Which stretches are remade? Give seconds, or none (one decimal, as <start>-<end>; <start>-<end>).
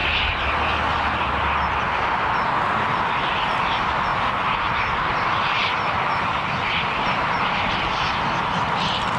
none